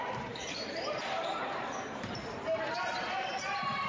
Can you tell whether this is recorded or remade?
remade